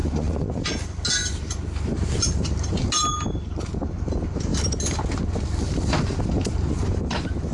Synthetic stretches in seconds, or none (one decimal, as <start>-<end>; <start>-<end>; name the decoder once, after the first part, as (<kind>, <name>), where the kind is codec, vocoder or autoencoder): 0.0-0.6 (vocoder, Vocos)